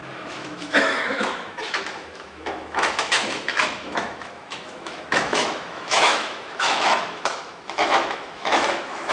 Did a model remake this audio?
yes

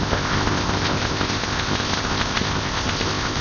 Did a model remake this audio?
yes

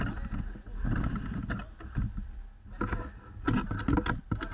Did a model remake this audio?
no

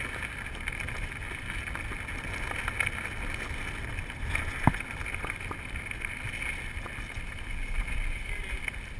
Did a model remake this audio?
no